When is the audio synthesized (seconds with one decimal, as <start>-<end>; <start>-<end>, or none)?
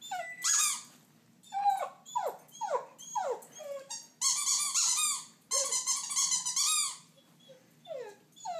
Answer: none